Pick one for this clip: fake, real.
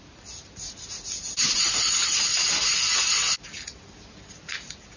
real